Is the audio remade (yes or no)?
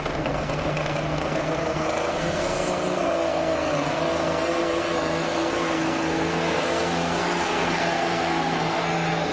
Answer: yes